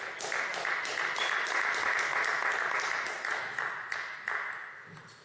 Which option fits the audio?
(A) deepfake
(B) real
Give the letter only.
B